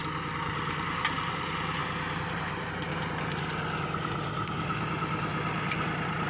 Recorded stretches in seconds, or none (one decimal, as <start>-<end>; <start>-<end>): 0.0-6.3